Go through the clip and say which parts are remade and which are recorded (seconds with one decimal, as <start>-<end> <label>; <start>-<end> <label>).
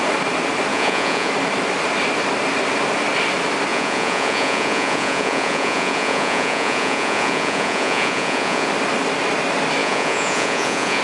0.0-0.7 recorded; 0.7-1.3 remade; 1.3-3.7 recorded; 3.7-8.7 remade; 8.7-9.8 recorded; 9.8-11.0 remade